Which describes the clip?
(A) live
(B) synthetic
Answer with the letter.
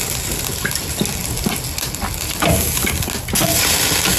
A